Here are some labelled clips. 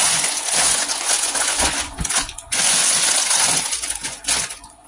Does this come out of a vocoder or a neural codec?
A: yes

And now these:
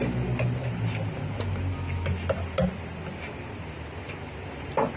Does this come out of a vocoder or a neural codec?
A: no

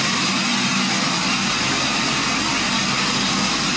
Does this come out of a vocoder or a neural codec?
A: no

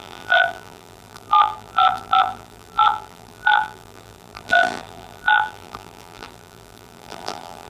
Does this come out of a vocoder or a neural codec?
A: yes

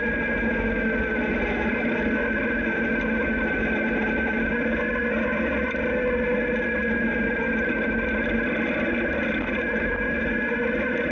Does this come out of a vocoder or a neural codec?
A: no